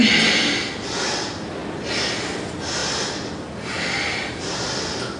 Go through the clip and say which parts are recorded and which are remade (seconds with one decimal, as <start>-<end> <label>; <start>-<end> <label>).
0.0-5.2 recorded